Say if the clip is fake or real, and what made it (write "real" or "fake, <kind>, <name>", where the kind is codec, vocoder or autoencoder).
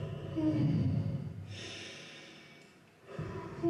real